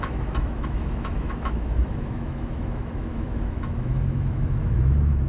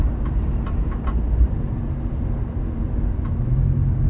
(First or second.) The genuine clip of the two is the second